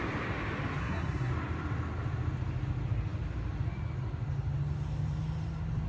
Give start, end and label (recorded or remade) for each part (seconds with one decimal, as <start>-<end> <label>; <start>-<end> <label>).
0.0-0.8 recorded; 0.8-1.3 remade; 1.3-5.9 recorded